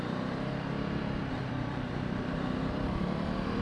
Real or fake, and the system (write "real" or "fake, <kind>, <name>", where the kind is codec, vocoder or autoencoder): fake, vocoder, BigVGAN v2